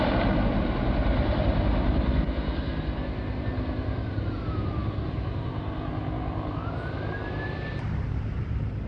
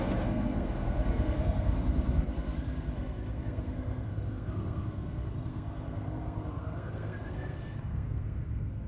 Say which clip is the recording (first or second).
first